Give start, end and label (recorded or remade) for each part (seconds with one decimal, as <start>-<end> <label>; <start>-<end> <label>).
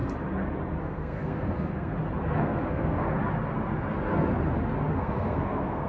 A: 0.0-0.8 recorded; 0.8-1.9 remade; 1.9-2.4 recorded; 2.4-3.0 remade; 3.0-4.9 recorded; 4.9-5.9 remade